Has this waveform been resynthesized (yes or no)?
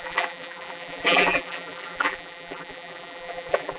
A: yes